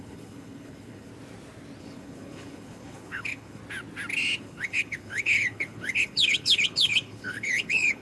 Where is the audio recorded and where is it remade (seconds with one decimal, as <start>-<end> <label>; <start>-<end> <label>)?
0.0-1.1 remade; 1.1-1.8 recorded; 1.8-3.6 remade; 3.6-4.4 recorded; 4.4-8.0 remade